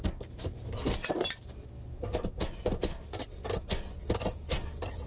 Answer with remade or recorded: recorded